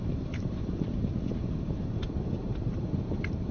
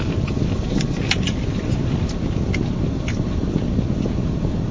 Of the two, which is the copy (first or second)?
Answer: first